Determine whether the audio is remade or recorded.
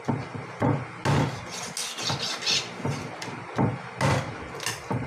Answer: recorded